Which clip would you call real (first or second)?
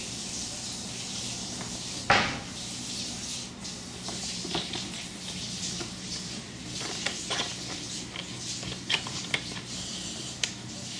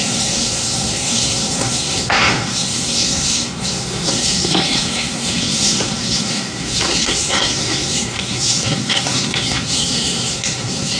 first